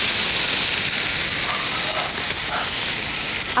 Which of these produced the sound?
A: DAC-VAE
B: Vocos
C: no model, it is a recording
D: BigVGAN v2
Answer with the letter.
C